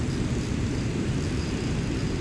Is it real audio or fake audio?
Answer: real